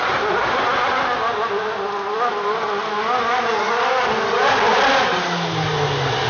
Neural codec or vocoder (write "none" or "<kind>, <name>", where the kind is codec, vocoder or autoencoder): none